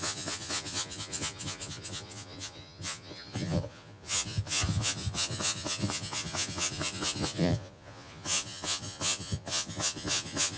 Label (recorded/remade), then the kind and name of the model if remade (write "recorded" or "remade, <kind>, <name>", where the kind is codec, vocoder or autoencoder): remade, vocoder, Vocos